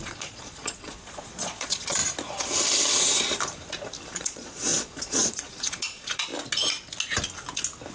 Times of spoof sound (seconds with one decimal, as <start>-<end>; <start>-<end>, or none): 0.0-2.0; 4.1-6.3